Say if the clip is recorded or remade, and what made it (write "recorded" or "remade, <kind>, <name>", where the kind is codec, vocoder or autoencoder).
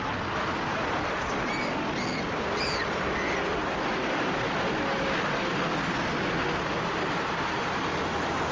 recorded